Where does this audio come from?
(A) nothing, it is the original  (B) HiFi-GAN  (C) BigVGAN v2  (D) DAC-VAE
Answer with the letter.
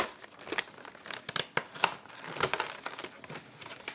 A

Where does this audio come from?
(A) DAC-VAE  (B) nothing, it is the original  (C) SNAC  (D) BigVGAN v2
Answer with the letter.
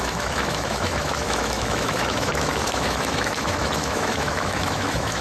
A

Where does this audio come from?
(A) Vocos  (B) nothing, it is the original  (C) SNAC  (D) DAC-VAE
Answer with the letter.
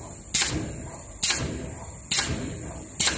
B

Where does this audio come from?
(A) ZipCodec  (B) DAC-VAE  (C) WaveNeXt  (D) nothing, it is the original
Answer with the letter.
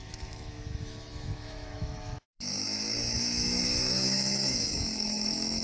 B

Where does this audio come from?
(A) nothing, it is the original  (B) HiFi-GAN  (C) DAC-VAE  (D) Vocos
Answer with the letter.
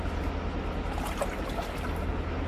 A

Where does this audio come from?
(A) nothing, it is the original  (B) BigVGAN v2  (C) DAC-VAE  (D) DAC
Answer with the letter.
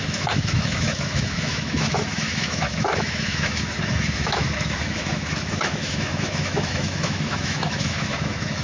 C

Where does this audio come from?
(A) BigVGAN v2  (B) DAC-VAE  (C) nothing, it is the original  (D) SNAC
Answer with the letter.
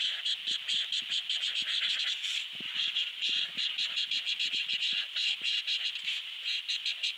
C